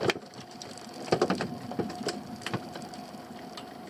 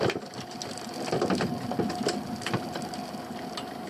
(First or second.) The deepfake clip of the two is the first